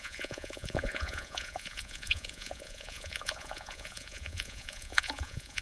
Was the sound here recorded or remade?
remade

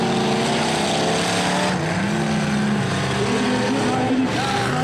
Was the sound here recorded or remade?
recorded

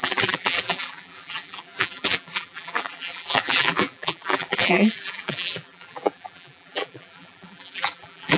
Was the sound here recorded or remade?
remade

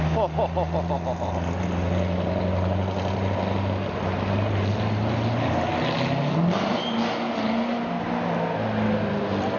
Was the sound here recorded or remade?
recorded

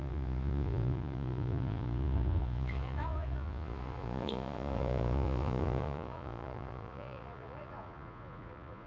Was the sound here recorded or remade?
remade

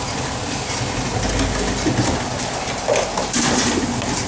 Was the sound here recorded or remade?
recorded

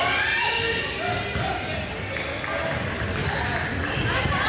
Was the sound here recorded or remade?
recorded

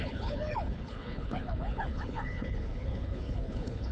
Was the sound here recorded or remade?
remade